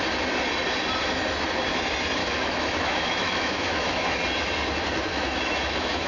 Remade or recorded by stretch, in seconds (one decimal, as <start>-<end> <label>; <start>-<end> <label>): 0.0-2.2 recorded; 2.2-4.2 remade; 4.2-5.1 recorded; 5.1-6.1 remade